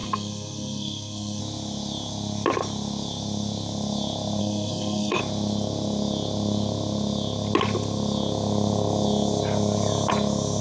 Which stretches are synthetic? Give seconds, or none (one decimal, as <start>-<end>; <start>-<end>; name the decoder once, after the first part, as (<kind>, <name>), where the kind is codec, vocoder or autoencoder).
0.0-1.4 (codec, SNAC); 4.4-5.2

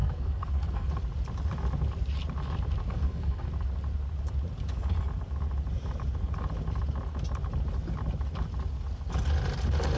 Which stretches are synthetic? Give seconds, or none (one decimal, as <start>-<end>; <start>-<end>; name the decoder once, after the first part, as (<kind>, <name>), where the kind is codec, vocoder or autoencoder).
0.0-0.9 (codec, SNAC); 2.9-3.5

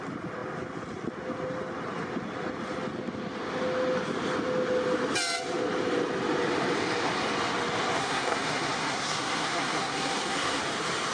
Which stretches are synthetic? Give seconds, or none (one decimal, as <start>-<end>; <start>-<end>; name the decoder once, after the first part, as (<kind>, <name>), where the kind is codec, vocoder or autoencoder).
8.0-10.6 (codec, SNAC)